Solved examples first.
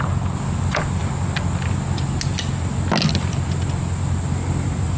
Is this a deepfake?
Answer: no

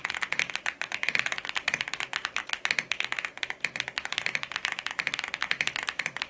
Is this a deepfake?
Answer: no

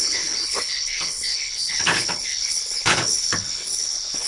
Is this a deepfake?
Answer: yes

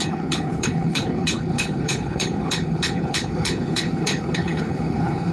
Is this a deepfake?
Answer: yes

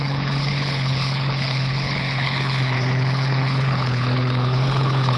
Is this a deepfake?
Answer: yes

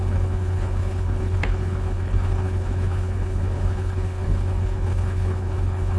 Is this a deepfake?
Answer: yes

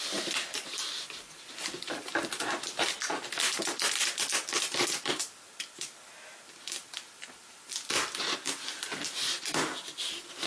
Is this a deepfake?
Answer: no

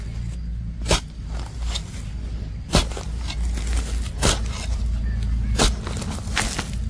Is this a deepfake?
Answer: no